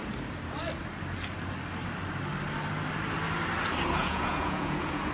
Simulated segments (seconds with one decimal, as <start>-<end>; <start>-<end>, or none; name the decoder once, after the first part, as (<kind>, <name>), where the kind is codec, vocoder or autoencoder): 4.0-5.1 (vocoder, Vocos)